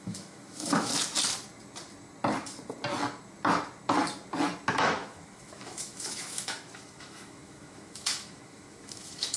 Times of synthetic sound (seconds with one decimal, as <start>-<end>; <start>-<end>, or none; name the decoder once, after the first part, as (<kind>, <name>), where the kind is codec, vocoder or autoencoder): 0.0-0.9 (autoencoder, DAC-VAE); 4.7-9.4